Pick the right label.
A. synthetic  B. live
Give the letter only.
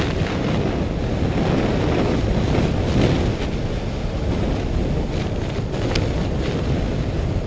B